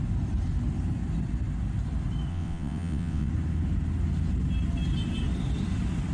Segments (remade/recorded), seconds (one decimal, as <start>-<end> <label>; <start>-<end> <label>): 0.0-2.3 recorded; 2.3-3.3 remade; 3.3-6.1 recorded